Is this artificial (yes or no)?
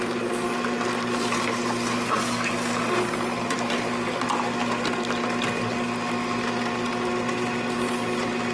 no